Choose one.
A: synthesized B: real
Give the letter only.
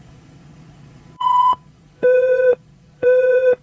A